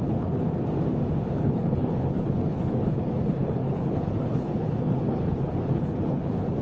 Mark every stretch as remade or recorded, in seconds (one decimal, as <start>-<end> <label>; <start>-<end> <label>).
0.0-0.5 remade; 0.5-1.3 recorded; 1.3-6.6 remade